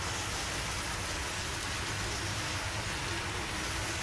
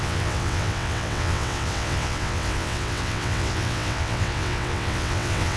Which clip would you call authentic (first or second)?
first